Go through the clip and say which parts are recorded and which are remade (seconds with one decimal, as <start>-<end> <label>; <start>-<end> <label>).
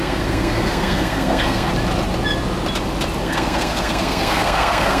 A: 0.0-1.7 remade; 1.7-3.2 recorded; 3.2-5.0 remade